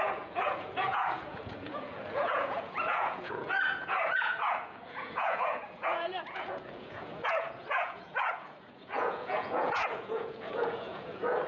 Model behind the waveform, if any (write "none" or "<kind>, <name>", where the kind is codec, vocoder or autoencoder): vocoder, Vocos